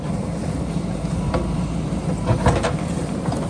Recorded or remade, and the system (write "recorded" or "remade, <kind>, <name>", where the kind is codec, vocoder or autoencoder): remade, vocoder, BigVGAN v2